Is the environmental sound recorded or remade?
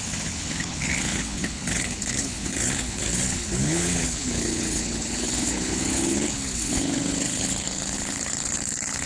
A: remade